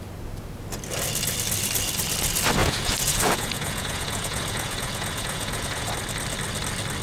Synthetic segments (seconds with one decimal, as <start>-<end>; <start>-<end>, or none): 2.6-5.9